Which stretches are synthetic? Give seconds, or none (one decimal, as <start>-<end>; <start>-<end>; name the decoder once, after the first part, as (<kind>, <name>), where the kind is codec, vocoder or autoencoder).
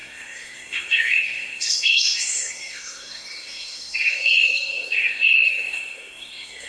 0.0-6.7 (codec, SNAC)